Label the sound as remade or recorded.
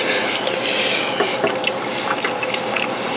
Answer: recorded